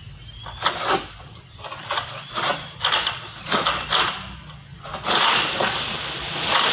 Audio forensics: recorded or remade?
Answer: recorded